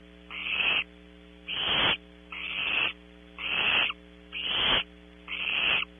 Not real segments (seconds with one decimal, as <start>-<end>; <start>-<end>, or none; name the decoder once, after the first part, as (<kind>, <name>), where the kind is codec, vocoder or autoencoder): none